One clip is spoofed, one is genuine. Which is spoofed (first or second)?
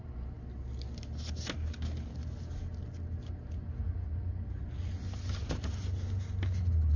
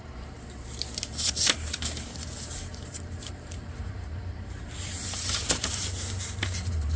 second